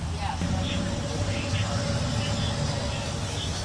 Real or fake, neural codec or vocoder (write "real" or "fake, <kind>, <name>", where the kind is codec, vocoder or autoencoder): real